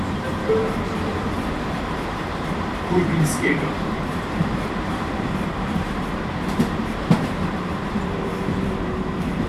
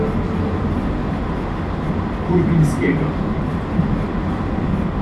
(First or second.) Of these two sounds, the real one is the second